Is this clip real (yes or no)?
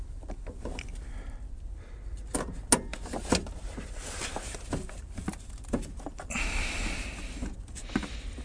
yes